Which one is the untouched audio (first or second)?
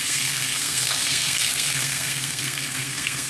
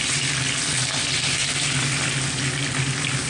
second